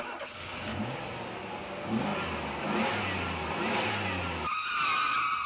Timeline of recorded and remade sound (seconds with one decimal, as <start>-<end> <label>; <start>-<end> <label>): 0.0-0.7 remade; 0.7-1.6 recorded; 1.6-2.1 remade; 2.1-5.5 recorded